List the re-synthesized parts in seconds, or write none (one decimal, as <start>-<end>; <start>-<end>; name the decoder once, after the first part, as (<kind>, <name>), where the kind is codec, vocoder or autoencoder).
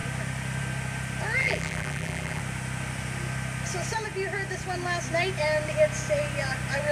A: 1.4-2.4 (vocoder, BigVGAN v2)